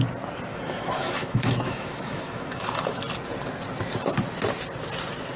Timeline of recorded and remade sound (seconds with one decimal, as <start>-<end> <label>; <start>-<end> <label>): 0.0-0.5 recorded; 0.5-3.0 remade; 3.0-5.4 recorded